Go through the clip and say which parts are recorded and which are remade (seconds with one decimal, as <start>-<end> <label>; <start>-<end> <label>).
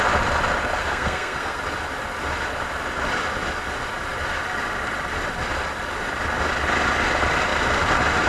0.0-0.8 recorded; 0.8-1.6 remade; 1.6-8.3 recorded